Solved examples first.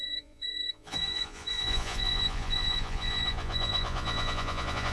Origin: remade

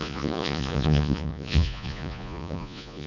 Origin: remade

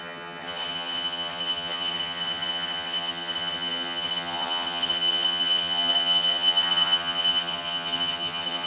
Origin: remade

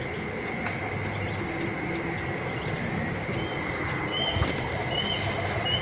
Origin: recorded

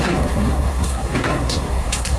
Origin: remade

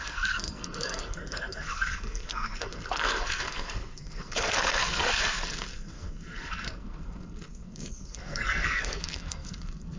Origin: remade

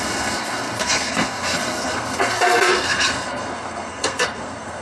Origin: remade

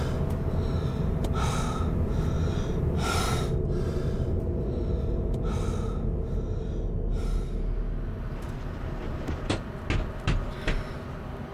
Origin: recorded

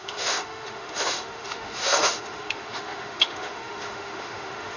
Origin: remade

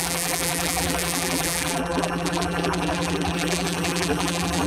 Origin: remade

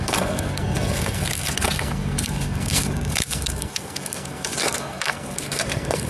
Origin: remade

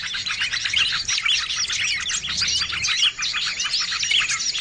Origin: recorded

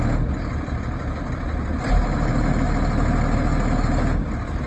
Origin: recorded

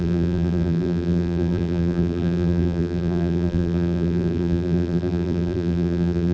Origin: remade